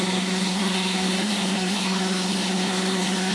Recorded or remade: remade